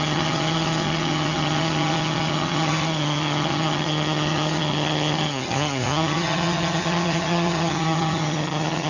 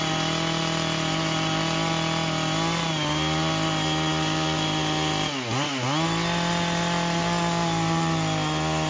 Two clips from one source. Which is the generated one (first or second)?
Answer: first